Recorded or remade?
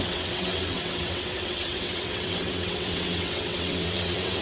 remade